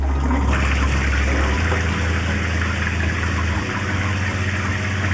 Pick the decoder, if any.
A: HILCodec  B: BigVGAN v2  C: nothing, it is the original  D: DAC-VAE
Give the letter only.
C